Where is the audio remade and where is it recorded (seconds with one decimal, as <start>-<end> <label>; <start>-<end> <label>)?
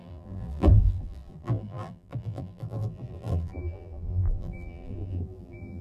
0.0-5.8 remade